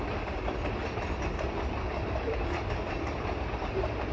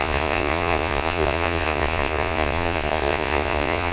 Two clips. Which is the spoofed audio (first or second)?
second